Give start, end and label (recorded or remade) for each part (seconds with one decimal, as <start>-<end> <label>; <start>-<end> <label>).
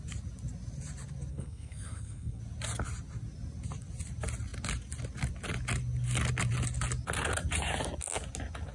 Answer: 0.0-1.3 recorded; 1.3-2.4 remade; 2.4-8.7 recorded